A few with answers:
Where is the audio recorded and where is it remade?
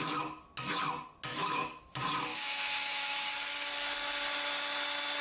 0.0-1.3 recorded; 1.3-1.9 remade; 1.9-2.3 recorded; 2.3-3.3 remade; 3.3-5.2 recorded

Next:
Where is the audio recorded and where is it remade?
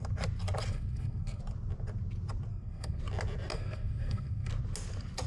0.0-0.7 recorded; 0.7-1.4 remade; 1.4-2.5 recorded; 2.5-3.0 remade; 3.0-3.5 recorded; 3.5-4.5 remade; 4.5-5.3 recorded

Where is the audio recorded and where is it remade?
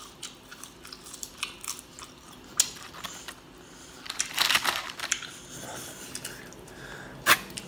0.0-0.5 recorded; 0.5-1.3 remade; 1.3-7.7 recorded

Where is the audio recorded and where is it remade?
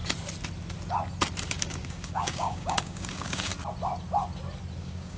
0.0-1.4 recorded; 1.4-3.5 remade; 3.5-4.8 recorded; 4.8-5.2 remade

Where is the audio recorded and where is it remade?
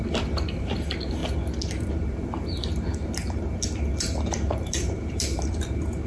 0.0-1.2 remade; 1.2-1.9 recorded; 1.9-2.7 remade; 2.7-4.2 recorded; 4.2-6.1 remade